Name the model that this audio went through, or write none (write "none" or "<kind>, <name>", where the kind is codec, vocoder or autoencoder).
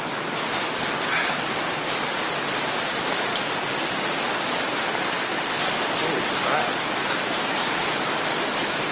none